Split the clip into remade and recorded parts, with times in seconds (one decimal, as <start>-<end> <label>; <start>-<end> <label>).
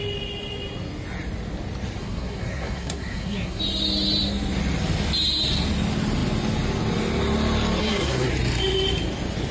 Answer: 0.0-2.0 recorded; 2.0-3.6 remade; 3.6-7.8 recorded; 7.8-8.3 remade; 8.3-9.5 recorded